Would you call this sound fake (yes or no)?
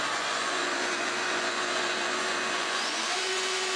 yes